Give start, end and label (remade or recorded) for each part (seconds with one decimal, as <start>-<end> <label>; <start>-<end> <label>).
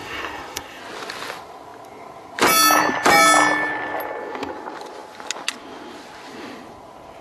0.0-0.8 remade; 0.8-7.2 recorded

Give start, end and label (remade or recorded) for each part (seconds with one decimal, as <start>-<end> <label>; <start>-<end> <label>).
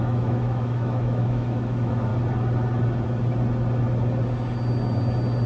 0.0-2.1 remade; 2.1-5.5 recorded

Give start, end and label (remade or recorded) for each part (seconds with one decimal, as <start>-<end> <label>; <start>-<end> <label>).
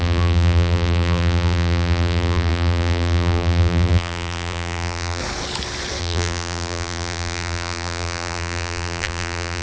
0.0-5.2 remade; 5.2-6.0 recorded; 6.0-9.6 remade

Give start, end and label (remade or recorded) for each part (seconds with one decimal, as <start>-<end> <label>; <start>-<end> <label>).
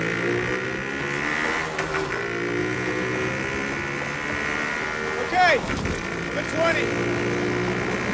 0.0-2.6 recorded; 2.6-3.3 remade; 3.3-8.1 recorded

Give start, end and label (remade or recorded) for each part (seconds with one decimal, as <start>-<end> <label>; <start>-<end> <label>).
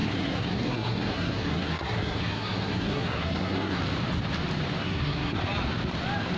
0.0-3.8 remade; 3.8-4.8 recorded; 4.8-5.4 remade; 5.4-6.4 recorded